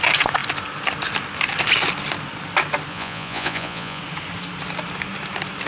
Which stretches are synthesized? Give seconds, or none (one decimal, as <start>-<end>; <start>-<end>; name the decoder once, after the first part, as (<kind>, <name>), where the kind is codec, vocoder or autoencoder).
2.9-4.0 (vocoder, Vocos)